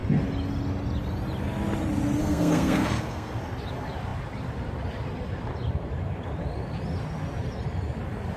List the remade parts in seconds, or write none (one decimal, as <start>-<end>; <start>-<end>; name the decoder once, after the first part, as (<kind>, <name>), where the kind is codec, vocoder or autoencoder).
2.2-3.4 (codec, SNAC)

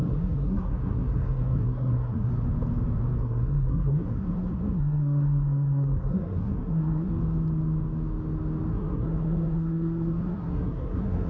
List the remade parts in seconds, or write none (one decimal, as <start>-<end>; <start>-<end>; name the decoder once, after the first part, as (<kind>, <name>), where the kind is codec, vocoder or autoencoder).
0.0-2.3 (codec, SNAC); 3.2-7.1; 8.7-11.3

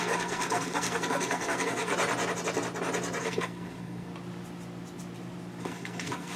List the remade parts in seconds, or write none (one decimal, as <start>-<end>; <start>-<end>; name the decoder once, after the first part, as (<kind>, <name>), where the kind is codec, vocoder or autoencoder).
0.0-1.9 (codec, SNAC); 3.2-4.1; 5.6-6.4

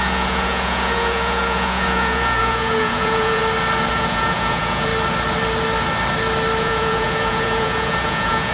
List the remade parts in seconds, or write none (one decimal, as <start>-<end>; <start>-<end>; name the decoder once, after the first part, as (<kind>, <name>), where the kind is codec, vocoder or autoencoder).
0.0-3.4 (vocoder, Vocos); 3.9-4.9; 6.6-8.5